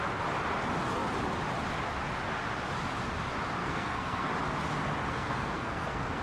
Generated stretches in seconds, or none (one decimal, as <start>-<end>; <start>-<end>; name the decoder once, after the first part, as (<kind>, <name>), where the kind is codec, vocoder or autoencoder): 3.6-4.3 (codec, SNAC); 5.0-6.2